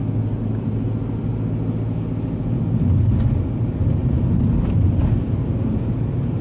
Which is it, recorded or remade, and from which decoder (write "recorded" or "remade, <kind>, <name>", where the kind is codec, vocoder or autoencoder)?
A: recorded